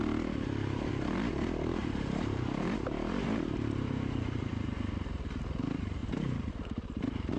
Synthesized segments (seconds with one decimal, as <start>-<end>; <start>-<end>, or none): 1.8-4.5; 6.0-6.5